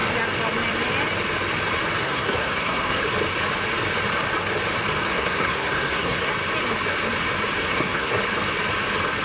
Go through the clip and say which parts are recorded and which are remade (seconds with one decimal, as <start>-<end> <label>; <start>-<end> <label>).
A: 0.0-2.0 recorded; 2.0-3.0 remade; 3.0-5.1 recorded; 5.1-6.3 remade; 6.3-7.6 recorded; 7.6-8.2 remade; 8.2-9.2 recorded